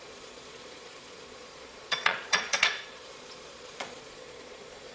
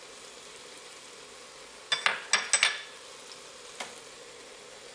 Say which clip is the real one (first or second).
second